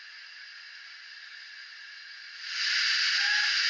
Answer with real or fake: real